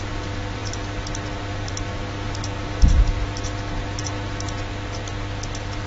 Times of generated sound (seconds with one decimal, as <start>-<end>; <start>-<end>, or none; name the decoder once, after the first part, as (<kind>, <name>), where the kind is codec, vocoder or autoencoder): none